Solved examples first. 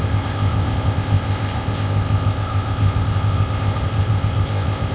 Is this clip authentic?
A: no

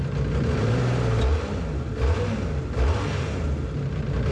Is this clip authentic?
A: yes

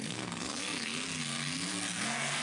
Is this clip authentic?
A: no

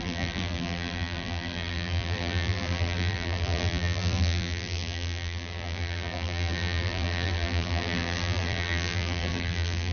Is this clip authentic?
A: no